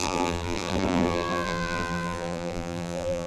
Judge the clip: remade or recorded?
remade